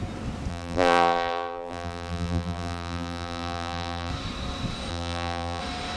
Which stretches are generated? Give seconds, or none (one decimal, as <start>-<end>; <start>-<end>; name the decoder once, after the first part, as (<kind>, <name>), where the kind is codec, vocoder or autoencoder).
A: 0.5-4.1 (vocoder, BigVGAN v2); 4.9-5.6